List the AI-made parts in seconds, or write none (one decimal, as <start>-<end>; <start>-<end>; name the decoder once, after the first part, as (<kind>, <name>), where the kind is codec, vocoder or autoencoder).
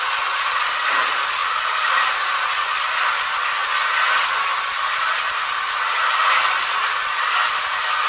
none